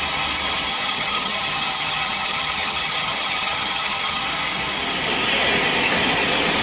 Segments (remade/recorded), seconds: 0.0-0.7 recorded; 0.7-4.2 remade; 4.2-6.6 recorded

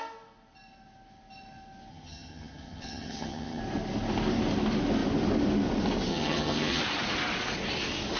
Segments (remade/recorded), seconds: 0.0-1.9 recorded; 1.9-3.6 remade; 3.6-6.1 recorded; 6.1-6.8 remade; 6.8-8.2 recorded

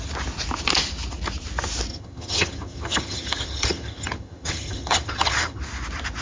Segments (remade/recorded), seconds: 0.0-1.9 recorded; 1.9-5.6 remade; 5.6-6.2 recorded

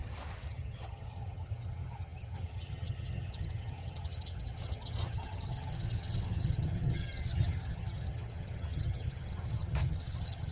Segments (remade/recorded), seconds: 0.0-0.5 recorded; 0.5-10.5 remade

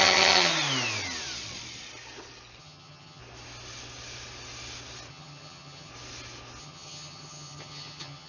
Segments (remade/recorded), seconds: 0.0-0.5 remade; 0.5-2.6 recorded; 2.6-3.2 remade; 3.2-5.1 recorded; 5.1-5.9 remade; 5.9-6.6 recorded; 6.6-8.3 remade